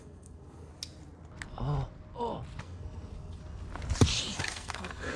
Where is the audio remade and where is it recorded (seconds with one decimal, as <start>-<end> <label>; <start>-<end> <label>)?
0.0-0.7 remade; 0.7-2.6 recorded; 2.6-3.4 remade; 3.4-4.4 recorded; 4.4-5.2 remade